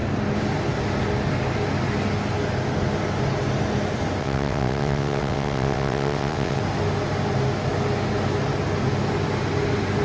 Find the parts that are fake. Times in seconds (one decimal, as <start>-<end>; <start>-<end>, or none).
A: 4.2-6.6